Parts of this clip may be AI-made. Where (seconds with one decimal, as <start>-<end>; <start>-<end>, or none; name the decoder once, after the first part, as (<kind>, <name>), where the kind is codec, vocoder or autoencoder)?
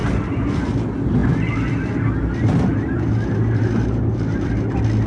0.0-0.7 (vocoder, BigVGAN v2); 2.7-4.5